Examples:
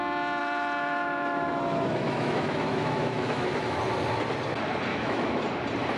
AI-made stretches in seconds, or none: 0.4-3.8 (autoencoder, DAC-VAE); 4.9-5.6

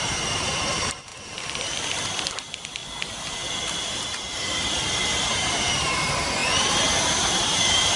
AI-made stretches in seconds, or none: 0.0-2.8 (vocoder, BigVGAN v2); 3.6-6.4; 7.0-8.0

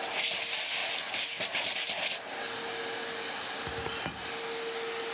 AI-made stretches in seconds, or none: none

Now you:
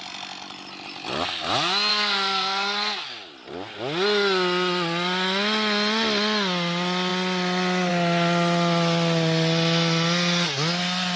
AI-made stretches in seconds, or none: 1.9-3.0 (codec, SNAC)